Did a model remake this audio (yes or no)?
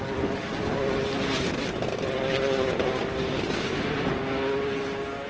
no